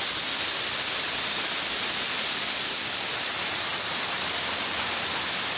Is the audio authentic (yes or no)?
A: yes